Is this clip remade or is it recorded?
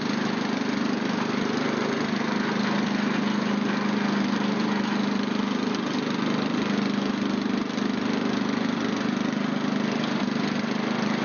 recorded